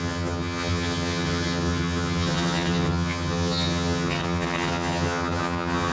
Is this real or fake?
fake